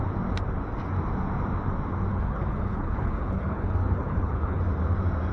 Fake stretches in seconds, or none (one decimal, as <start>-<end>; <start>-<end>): 2.1-4.6